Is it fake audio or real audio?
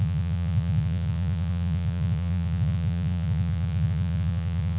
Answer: fake